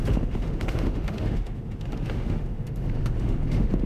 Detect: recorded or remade remade